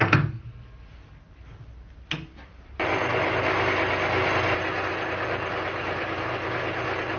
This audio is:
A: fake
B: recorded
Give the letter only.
B